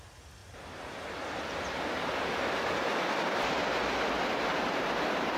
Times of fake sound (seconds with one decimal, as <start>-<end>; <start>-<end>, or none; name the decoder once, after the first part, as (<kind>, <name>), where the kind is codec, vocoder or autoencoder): 0.4-3.6 (vocoder, BigVGAN v2); 4.5-5.4